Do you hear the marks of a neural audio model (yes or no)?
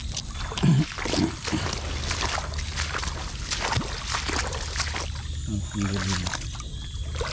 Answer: no